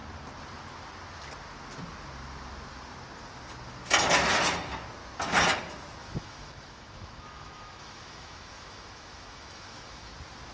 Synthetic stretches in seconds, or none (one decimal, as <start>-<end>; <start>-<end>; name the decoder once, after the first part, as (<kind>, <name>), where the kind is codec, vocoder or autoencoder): 6.0-10.1 (autoencoder, DAC-VAE)